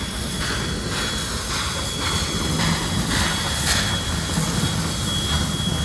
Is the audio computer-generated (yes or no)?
no